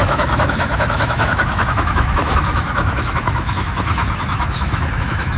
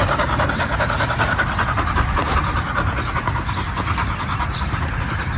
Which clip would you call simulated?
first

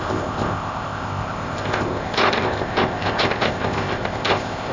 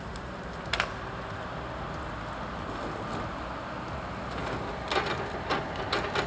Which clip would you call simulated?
first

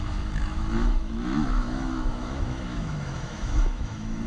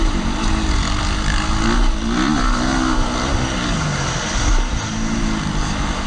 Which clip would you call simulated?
first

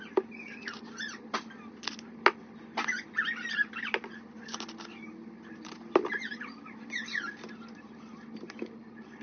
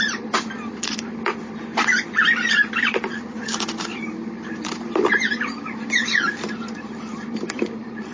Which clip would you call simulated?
second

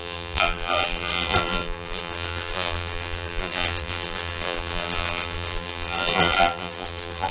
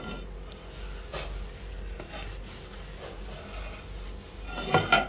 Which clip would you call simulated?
first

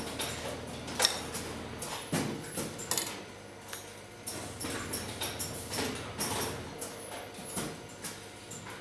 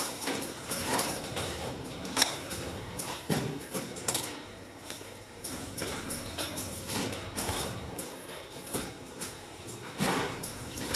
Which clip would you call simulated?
second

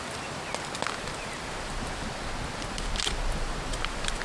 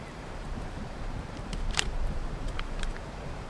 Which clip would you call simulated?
second